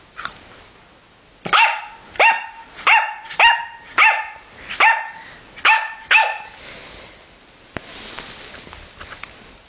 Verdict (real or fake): real